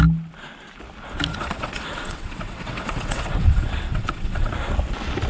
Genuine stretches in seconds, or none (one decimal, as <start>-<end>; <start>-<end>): 0.0-1.3; 4.5-5.3